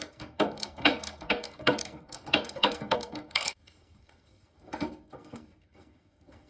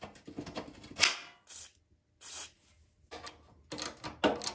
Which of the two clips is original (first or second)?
second